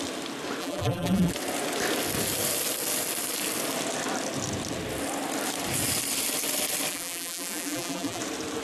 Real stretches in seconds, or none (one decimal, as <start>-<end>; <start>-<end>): 0.0-0.6; 1.3-6.9; 8.2-8.6